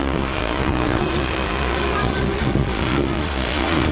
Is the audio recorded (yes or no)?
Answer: no